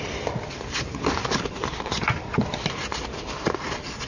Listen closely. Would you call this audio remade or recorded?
recorded